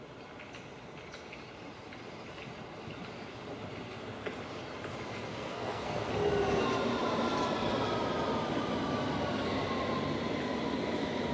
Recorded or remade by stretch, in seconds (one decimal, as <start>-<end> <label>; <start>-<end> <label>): 0.0-5.3 recorded; 5.3-6.1 remade; 6.1-11.3 recorded